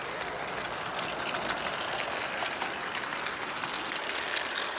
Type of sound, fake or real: real